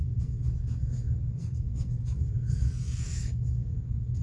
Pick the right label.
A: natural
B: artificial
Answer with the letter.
B